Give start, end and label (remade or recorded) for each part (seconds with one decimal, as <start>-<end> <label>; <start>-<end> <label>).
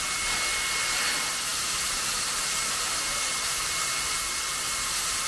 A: 0.0-5.3 recorded